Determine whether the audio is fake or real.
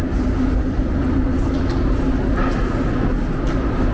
real